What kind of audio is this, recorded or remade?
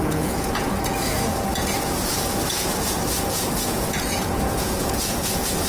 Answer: remade